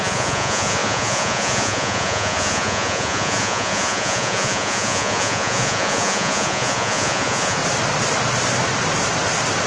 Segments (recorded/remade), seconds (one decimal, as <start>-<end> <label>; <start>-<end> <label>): 0.0-7.6 remade; 7.6-9.7 recorded